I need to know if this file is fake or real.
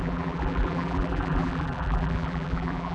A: fake